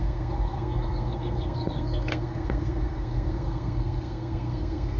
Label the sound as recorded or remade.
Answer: remade